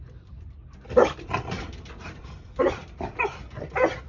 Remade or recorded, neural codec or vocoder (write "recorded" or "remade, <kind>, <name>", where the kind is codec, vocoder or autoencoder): remade, vocoder, BigVGAN v2